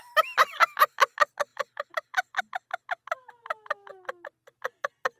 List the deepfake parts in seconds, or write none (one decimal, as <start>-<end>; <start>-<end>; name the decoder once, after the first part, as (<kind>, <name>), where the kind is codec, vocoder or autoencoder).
1.5-2.4 (vocoder, BigVGAN v2)